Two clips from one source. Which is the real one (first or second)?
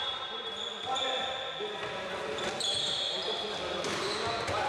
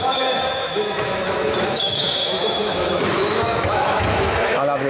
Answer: first